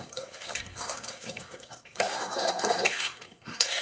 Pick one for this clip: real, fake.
fake